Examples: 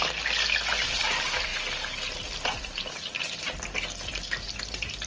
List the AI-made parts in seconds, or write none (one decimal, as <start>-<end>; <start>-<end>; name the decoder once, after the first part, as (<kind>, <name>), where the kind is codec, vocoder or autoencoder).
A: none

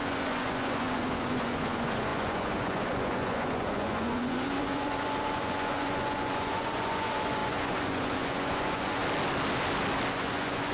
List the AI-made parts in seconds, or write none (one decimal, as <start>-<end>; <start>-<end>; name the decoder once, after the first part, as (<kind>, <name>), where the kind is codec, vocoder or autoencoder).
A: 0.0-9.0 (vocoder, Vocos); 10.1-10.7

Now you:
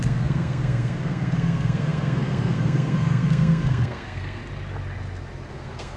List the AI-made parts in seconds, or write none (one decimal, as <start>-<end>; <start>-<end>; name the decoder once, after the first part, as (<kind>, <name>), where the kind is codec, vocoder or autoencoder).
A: 0.0-4.4 (codec, SNAC); 5.5-6.0

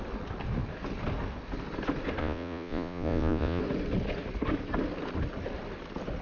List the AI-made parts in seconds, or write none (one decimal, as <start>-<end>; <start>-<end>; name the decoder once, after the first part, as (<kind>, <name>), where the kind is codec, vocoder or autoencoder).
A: 2.2-3.6 (vocoder, Vocos)

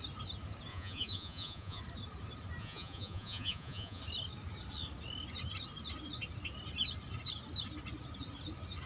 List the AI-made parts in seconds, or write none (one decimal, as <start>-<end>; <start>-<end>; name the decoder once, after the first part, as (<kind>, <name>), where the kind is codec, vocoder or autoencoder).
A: 0.7-1.8 (vocoder, Vocos); 2.6-4.0

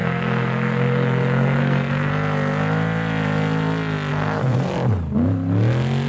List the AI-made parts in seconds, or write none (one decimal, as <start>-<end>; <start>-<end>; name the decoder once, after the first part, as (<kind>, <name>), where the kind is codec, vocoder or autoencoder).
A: 0.0-2.1 (codec, SNAC); 4.1-4.7